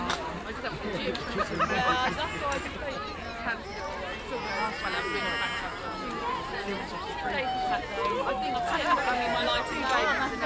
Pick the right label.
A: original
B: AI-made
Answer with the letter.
A